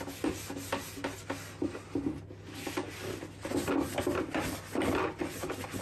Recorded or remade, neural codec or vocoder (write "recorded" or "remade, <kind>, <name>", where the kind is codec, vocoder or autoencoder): recorded